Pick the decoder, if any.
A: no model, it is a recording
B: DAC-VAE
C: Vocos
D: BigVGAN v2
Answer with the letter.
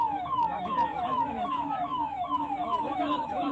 B